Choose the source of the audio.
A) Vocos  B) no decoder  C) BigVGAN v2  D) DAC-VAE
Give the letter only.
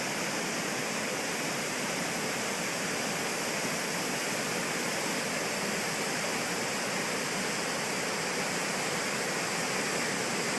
B